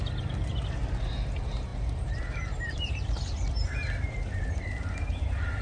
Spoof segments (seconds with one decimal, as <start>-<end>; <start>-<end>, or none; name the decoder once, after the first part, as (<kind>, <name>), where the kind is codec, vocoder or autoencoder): 0.0-5.6 (vocoder, BigVGAN v2)